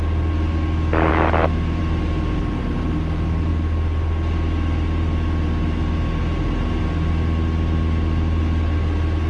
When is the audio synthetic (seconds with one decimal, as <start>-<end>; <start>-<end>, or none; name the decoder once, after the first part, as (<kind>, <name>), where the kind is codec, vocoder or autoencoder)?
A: 1.1-1.8 (autoencoder, DAC-VAE)